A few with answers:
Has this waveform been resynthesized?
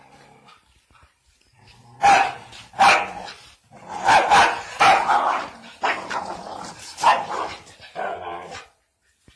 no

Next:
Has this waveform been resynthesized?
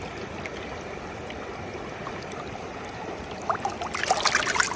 no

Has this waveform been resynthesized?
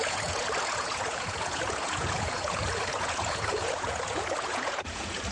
yes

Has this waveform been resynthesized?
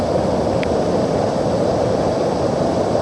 no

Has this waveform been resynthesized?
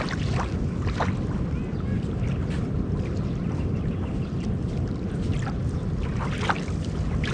no